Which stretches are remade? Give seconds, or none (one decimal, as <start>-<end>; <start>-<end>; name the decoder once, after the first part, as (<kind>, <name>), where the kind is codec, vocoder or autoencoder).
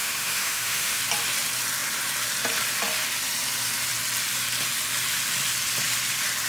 0.0-1.0 (autoencoder, DAC-VAE)